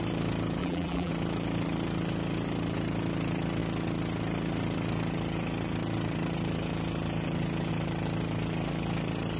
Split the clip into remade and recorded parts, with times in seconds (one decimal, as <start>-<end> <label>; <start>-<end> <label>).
0.0-0.6 recorded; 0.6-1.1 remade; 1.1-9.4 recorded